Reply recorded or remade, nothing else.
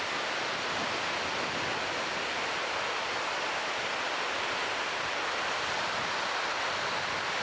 recorded